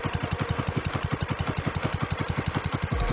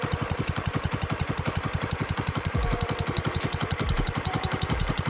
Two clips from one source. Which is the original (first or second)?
first